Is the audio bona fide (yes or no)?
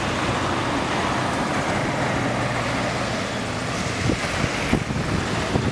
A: yes